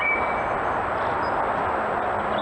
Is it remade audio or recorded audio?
recorded